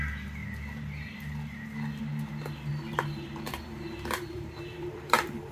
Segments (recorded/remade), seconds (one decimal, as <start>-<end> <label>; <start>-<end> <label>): 0.0-2.7 recorded; 2.7-5.5 remade